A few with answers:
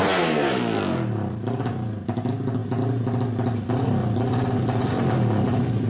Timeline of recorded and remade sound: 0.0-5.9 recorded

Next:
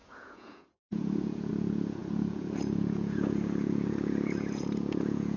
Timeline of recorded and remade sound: 0.0-5.4 remade

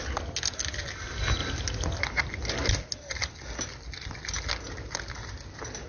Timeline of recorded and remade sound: 0.0-5.9 recorded